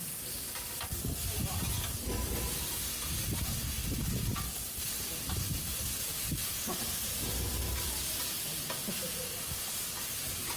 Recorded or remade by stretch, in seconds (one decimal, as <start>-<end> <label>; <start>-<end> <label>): 0.0-10.6 recorded